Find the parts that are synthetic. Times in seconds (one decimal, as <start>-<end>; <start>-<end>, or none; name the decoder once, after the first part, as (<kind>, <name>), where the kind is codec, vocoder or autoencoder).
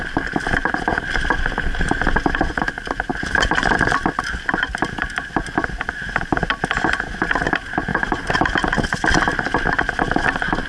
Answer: 7.9-8.8 (vocoder, BigVGAN v2)